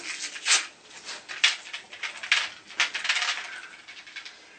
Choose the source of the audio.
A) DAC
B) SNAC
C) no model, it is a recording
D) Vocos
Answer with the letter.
C